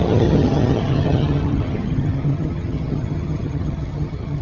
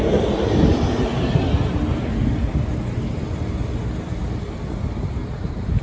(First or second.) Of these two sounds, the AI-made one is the first